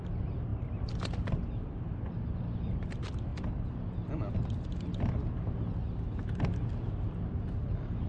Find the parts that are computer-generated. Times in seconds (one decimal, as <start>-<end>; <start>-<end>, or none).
none